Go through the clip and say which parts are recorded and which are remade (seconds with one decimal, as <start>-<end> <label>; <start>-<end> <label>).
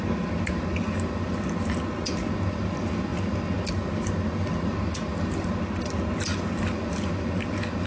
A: 0.0-7.9 recorded